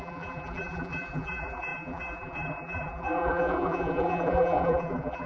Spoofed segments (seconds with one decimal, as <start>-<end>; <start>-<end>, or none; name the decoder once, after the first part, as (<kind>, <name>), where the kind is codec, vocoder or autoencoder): 0.0-5.3 (vocoder, BigVGAN v2)